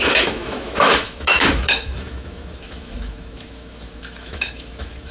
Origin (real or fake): fake